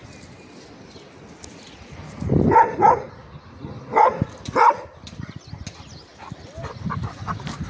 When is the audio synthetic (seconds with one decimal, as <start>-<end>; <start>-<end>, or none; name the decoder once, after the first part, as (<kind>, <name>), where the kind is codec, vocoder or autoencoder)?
none